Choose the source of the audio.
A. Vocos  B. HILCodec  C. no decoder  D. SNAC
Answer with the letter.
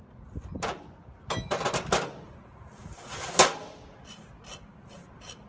C